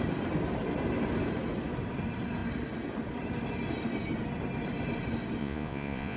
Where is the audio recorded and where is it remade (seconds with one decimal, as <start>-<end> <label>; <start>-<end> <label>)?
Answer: 0.0-5.4 recorded; 5.4-6.2 remade